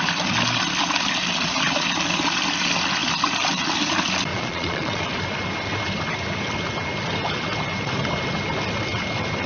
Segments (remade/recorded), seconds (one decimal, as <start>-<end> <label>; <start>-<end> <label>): 0.0-4.3 recorded; 4.3-5.0 remade; 5.0-9.5 recorded